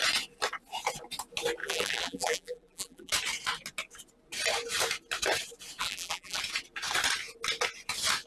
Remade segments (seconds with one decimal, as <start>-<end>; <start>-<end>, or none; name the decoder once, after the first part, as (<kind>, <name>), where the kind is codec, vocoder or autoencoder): 1.6-3.1 (vocoder, BigVGAN v2); 5.8-6.4